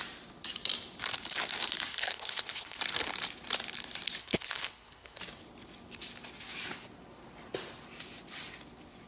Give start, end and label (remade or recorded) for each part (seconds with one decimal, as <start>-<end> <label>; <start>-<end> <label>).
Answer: 0.0-1.9 recorded; 1.9-2.8 remade; 2.8-4.2 recorded; 4.2-5.2 remade; 5.2-9.1 recorded